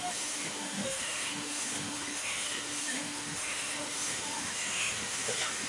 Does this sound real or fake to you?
fake